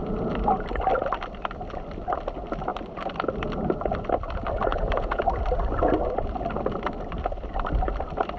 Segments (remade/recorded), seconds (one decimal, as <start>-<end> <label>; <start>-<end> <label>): 0.0-4.7 recorded; 4.7-5.2 remade; 5.2-8.4 recorded